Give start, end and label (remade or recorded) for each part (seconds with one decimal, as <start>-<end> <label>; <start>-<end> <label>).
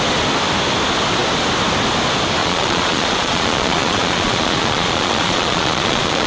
0.0-2.4 recorded; 2.4-6.3 remade